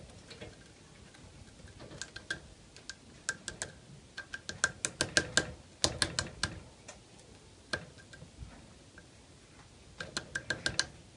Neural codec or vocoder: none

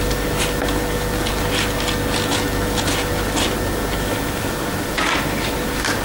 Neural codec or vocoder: none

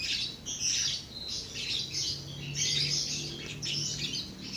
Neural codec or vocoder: none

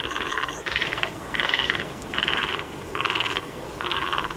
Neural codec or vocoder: codec, SNAC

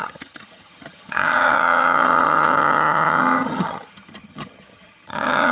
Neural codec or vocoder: vocoder, HiFi-GAN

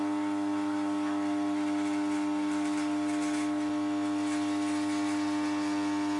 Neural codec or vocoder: none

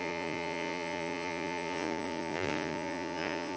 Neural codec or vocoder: vocoder, Vocos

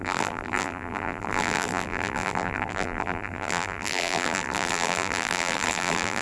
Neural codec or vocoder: vocoder, BigVGAN v2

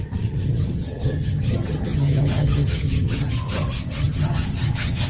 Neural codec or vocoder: vocoder, HiFi-GAN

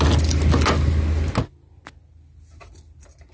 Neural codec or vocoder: none